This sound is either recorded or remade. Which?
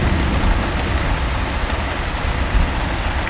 recorded